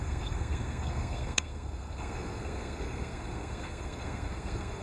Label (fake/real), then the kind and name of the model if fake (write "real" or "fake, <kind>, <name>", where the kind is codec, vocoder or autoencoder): fake, codec, SNAC